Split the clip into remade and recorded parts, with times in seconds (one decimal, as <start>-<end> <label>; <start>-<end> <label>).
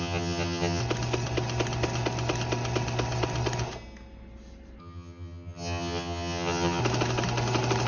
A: 0.0-0.8 remade; 0.8-4.8 recorded; 4.8-6.8 remade; 6.8-7.9 recorded